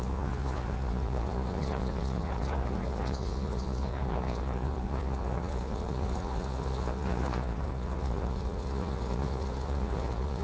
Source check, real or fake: fake